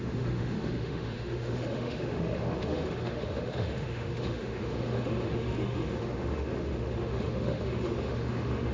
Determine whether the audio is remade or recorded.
remade